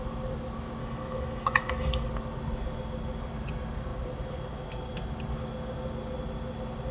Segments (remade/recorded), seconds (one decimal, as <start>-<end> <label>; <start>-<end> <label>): 0.0-0.8 recorded; 0.8-2.1 remade; 2.1-6.9 recorded